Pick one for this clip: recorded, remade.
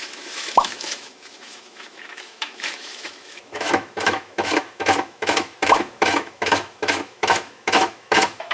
remade